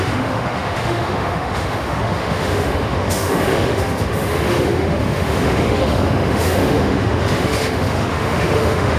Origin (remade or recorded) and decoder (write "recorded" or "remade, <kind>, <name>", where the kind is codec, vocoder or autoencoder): remade, autoencoder, DAC-VAE